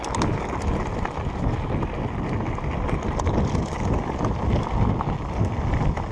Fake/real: real